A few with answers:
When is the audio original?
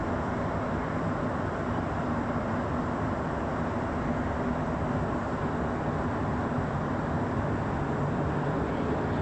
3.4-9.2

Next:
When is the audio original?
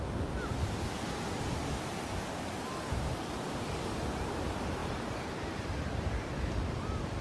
0.0-4.8; 6.2-7.2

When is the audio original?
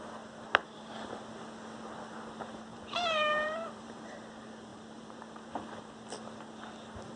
0.0-0.6; 1.1-2.7; 4.2-4.7; 5.9-7.2